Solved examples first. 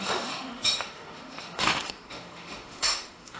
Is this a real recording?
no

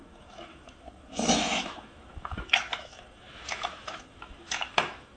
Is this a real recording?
no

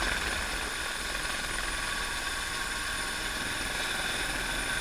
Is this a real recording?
yes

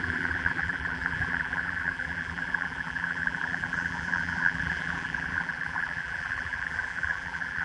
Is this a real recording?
no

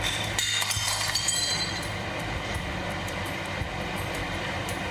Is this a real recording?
no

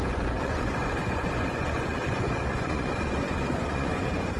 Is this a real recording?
no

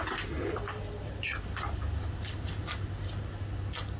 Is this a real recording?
yes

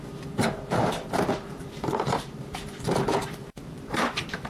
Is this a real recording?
no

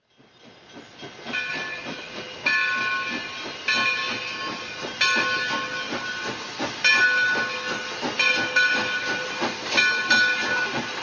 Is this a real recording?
yes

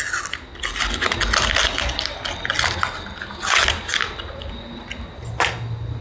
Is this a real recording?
yes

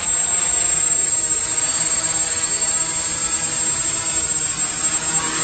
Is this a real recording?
yes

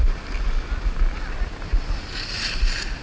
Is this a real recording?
yes